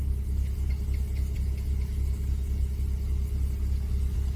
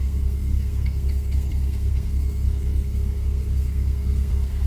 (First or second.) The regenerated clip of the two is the second